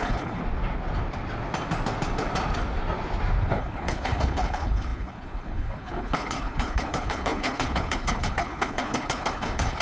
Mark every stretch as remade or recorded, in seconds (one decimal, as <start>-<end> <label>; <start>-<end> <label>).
0.0-0.4 remade; 0.4-3.5 recorded; 3.5-9.8 remade